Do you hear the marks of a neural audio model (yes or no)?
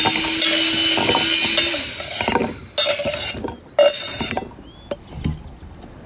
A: no